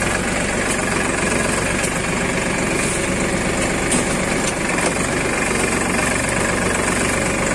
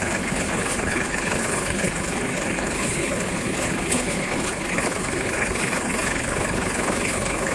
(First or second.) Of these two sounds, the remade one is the second